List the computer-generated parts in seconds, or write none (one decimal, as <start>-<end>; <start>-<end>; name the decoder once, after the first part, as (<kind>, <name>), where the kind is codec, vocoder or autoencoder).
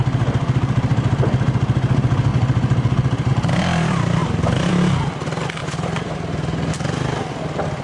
2.3-3.3 (vocoder, BigVGAN v2); 4.2-4.7; 5.6-6.7